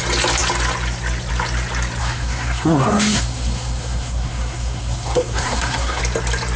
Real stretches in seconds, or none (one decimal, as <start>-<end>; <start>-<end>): 0.0-2.0; 6.0-6.6